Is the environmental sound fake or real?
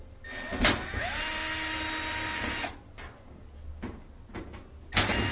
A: real